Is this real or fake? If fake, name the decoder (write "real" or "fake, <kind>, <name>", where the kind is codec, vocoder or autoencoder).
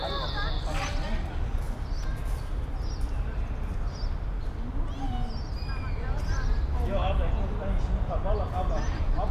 real